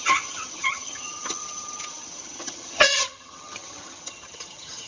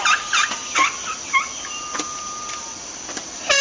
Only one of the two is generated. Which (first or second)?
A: first